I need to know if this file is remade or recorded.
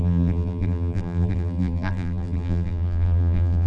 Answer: remade